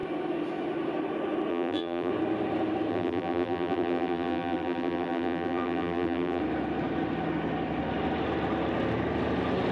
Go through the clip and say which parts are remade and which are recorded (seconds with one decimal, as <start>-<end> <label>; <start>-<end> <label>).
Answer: 0.0-1.5 recorded; 1.5-2.1 remade; 2.1-2.9 recorded; 2.9-6.4 remade; 6.4-9.7 recorded